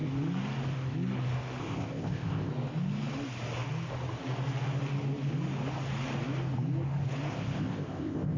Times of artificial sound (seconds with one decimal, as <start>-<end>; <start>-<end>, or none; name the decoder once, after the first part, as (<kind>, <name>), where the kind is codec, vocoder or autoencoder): 1.6-2.5 (codec, ZipCodec); 7.3-8.4